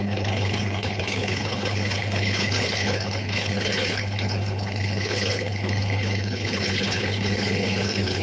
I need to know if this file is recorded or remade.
remade